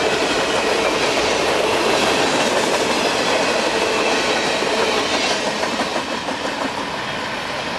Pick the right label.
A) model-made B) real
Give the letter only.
B